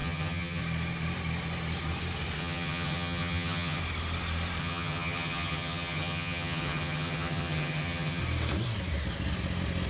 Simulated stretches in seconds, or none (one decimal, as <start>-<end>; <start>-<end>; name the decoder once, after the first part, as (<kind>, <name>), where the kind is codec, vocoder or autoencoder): 0.0-0.6 (vocoder, HiFi-GAN); 2.4-3.8; 4.6-8.2

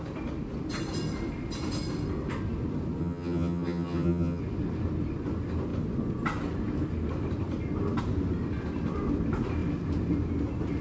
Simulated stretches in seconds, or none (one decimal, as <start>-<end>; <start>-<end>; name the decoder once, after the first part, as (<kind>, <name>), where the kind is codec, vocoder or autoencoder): 3.0-4.4 (vocoder, HiFi-GAN)

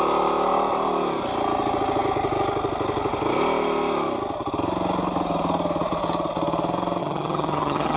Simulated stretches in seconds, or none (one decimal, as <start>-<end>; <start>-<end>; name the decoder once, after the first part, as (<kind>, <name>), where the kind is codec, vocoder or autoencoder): 7.0-8.0 (vocoder, HiFi-GAN)